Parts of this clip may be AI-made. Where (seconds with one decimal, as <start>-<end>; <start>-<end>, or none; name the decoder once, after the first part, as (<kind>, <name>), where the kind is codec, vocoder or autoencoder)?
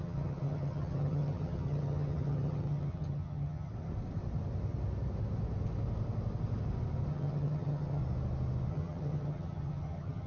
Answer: 0.0-3.7 (vocoder, HiFi-GAN); 7.1-8.0; 8.7-10.3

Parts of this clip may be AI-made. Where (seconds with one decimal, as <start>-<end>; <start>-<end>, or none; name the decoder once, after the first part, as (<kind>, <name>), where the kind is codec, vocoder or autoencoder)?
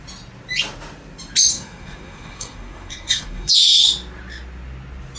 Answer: 1.5-3.5 (codec, SNAC)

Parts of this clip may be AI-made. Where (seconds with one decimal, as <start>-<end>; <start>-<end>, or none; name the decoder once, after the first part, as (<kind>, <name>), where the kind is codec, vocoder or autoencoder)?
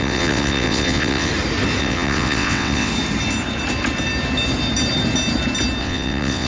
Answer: 0.0-1.3 (vocoder, WaveNeXt); 1.8-2.9; 5.8-6.5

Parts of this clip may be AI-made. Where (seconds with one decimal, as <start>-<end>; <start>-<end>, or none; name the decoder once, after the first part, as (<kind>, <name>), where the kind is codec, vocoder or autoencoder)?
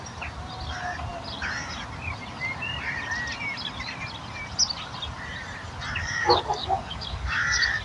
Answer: 6.0-7.8 (codec, DAC)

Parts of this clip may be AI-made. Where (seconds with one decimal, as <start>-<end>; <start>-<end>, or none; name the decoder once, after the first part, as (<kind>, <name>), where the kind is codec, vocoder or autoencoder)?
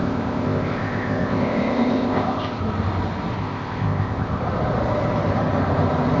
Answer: 0.0-2.6 (codec, ZipCodec); 3.4-4.4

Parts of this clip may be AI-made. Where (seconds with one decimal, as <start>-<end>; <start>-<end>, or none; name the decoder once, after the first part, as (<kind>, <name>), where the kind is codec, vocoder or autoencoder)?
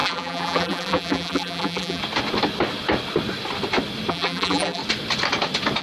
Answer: 0.0-2.0 (vocoder, BigVGAN v2); 4.1-4.8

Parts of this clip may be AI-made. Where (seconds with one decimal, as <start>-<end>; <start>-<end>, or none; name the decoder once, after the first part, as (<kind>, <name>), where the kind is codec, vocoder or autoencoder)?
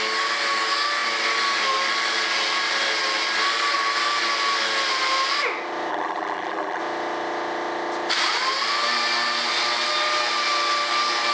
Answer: 5.9-6.8 (vocoder, BigVGAN v2)